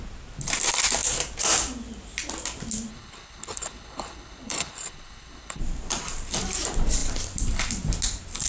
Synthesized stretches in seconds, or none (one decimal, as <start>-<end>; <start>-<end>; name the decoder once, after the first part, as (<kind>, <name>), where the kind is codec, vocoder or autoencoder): 2.9-5.6 (codec, HILCodec)

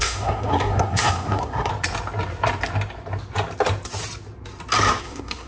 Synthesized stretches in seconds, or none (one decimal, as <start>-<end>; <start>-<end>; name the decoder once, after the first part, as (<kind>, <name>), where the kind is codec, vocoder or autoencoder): 0.0-1.7 (codec, SNAC); 5.0-5.5

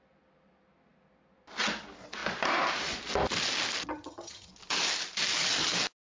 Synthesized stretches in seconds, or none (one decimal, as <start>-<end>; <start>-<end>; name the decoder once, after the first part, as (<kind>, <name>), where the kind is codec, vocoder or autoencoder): 3.9-4.5 (vocoder, HiFi-GAN)

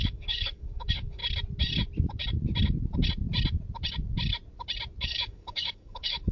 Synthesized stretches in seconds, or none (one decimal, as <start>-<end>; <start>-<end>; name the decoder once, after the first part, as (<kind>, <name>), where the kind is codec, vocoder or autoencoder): 0.0-1.2 (codec, DAC); 5.0-6.3

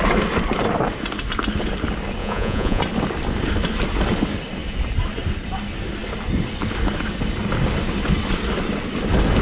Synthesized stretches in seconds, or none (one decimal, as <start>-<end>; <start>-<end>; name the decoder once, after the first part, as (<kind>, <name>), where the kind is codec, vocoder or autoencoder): 2.2-2.8 (vocoder, Vocos)